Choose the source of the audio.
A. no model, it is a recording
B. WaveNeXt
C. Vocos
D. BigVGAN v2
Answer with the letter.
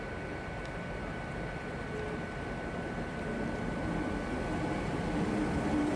A